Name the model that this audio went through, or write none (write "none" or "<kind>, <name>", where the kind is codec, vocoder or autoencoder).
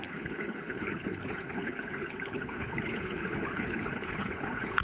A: codec, HILCodec